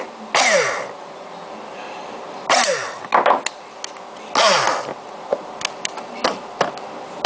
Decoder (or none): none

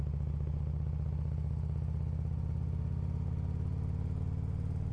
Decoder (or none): none